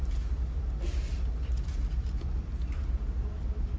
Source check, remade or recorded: recorded